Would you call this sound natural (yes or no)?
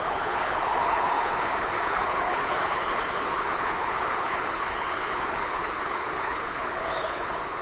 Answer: no